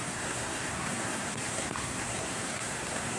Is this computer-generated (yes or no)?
yes